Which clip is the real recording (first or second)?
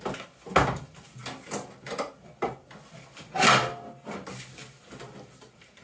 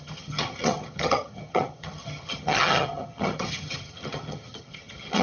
first